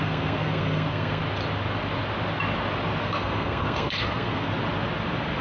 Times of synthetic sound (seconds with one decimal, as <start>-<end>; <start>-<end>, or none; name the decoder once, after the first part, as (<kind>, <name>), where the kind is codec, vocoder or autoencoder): 0.0-1.2 (codec, SNAC); 3.0-4.5